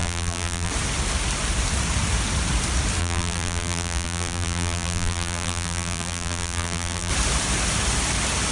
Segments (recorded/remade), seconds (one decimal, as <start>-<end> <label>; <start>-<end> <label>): 0.0-0.7 remade; 0.7-3.0 recorded; 3.0-7.1 remade; 7.1-8.5 recorded